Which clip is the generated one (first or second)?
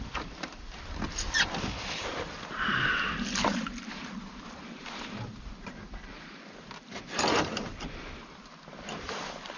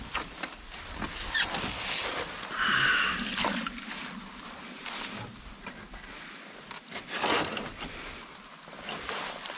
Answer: first